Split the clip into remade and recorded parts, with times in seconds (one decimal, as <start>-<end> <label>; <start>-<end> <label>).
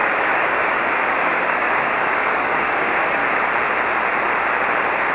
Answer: 0.0-3.2 remade; 3.2-5.1 recorded